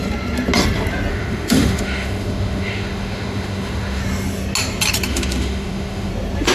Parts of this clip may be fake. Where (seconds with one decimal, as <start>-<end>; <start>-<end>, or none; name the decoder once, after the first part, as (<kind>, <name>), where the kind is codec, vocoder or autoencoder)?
1.1-4.0 (autoencoder, DAC-VAE); 5.1-6.1